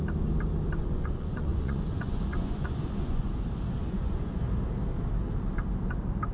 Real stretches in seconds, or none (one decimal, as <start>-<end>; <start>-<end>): 0.0-0.8; 3.3-3.8; 4.4-6.3